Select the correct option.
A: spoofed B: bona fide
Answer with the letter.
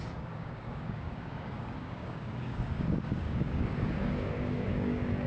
A